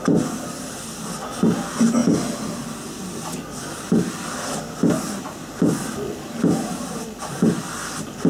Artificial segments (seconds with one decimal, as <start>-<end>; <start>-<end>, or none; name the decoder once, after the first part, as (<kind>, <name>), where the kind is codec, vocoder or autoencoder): none